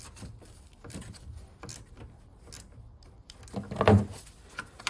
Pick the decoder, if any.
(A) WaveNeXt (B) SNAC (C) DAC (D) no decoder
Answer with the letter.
D